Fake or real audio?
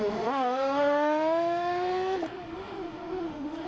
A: fake